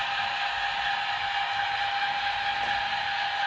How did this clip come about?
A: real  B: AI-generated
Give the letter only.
A